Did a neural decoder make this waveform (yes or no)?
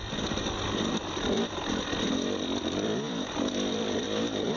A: no